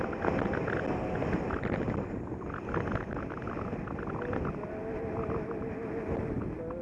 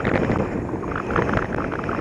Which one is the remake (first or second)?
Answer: second